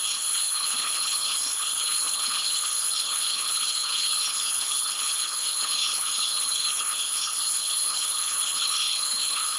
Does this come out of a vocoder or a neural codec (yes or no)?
yes